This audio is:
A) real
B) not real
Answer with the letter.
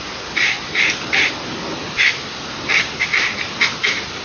B